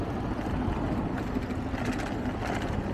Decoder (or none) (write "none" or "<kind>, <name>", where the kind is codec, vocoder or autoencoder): none